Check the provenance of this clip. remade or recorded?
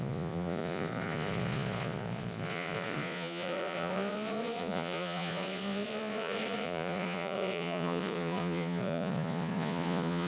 remade